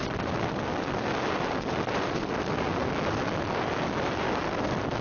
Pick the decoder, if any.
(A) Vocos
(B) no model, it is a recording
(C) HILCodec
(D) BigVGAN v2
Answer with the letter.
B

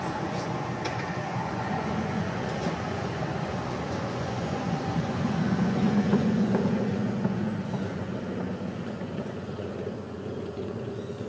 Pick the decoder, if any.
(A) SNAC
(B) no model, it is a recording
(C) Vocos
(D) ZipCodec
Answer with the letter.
C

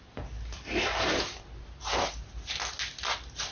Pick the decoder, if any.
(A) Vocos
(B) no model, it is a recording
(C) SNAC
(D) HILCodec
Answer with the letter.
B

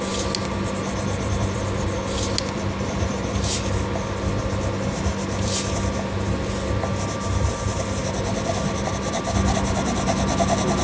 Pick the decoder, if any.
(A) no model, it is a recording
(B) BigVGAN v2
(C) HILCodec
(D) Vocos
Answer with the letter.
A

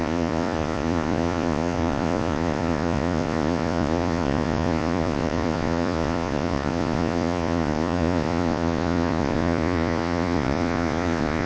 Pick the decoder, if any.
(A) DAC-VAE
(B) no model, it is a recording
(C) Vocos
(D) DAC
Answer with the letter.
C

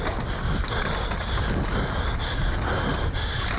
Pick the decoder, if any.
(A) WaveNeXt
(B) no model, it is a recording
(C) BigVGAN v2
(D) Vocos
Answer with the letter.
B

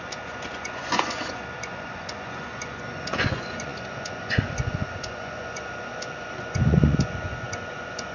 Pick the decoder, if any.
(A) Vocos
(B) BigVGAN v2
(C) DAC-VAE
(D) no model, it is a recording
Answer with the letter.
A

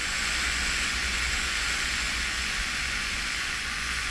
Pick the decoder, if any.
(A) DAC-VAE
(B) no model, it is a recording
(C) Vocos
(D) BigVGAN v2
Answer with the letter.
C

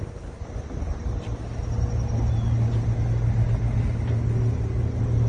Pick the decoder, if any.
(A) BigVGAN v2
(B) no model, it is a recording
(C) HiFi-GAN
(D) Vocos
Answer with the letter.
B